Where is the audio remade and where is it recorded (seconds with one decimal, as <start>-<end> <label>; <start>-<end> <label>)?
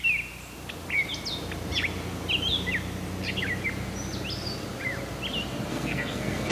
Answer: 0.0-5.7 recorded; 5.7-6.5 remade